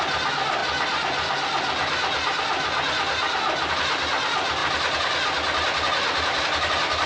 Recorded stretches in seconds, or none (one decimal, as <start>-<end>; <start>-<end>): 0.0-7.1